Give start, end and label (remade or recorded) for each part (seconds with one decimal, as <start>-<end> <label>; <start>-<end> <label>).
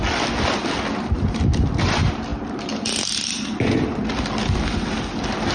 0.0-5.5 recorded